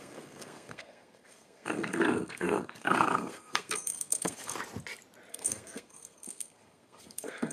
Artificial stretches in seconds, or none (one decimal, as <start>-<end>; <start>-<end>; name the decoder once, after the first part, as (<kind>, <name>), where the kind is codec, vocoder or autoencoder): 0.0-4.5 (codec, SNAC); 5.3-7.5

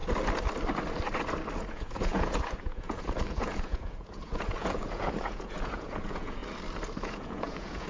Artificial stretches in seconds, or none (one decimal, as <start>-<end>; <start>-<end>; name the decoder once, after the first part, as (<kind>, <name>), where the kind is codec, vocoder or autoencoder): 1.7-6.4 (vocoder, Vocos); 7.0-7.9

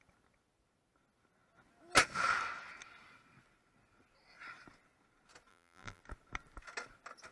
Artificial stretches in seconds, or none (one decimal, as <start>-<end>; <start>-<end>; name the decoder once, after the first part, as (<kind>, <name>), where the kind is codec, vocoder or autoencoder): 5.5-6.0 (vocoder, BigVGAN v2)

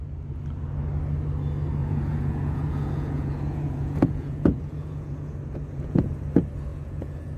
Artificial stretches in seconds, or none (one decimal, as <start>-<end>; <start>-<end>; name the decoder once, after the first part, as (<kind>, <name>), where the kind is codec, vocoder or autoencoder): 1.8-6.1 (vocoder, Vocos); 6.7-7.4

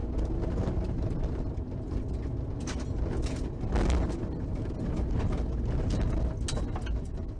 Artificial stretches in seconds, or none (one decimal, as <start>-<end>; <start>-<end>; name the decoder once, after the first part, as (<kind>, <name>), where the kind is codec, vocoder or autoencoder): none

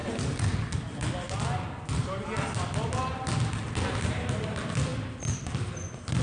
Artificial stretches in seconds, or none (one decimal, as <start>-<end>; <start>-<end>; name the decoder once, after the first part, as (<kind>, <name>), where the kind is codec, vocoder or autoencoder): none